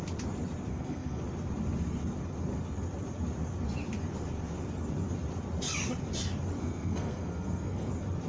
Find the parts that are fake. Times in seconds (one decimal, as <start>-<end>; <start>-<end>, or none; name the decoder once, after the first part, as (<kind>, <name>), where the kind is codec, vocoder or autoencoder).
0.7-1.2 (codec, SNAC); 6.6-7.9

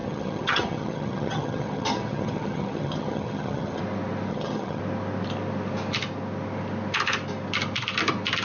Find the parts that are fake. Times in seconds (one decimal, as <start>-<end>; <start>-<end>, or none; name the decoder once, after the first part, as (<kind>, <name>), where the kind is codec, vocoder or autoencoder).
0.0-3.8 (vocoder, HiFi-GAN); 4.3-4.8

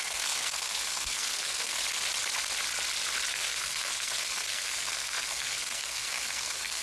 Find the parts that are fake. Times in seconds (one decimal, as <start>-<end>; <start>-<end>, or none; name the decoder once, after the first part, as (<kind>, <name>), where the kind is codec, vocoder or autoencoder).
0.0-1.8 (codec, SNAC); 3.3-6.8

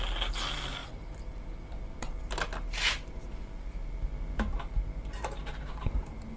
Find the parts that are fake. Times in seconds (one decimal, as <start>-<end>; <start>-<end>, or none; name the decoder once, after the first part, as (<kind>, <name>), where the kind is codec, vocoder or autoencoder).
0.8-2.0 (vocoder, BigVGAN v2); 3.8-4.7

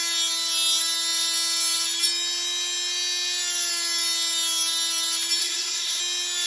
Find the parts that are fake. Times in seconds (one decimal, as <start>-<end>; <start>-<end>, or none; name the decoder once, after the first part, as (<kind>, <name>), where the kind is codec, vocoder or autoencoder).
5.4-6.0 (codec, SNAC)

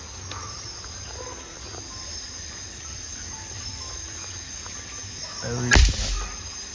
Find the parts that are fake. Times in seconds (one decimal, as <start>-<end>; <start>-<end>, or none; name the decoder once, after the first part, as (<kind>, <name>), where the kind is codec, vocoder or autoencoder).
none